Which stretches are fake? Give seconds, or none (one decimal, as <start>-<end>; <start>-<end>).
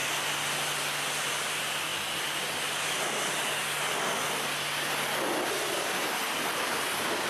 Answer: none